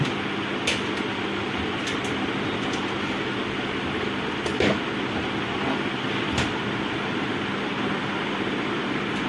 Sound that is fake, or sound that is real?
real